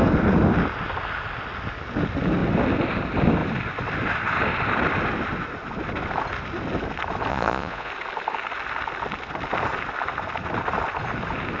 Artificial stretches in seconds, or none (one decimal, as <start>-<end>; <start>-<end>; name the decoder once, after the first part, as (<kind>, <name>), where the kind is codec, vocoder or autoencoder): 7.3-7.9 (vocoder, Vocos)